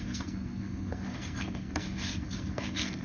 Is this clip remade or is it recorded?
remade